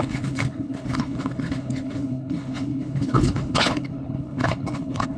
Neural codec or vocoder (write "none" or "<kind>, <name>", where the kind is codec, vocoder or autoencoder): codec, HILCodec